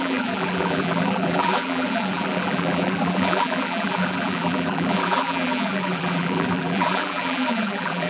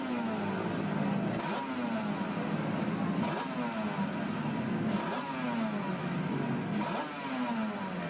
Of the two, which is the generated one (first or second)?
first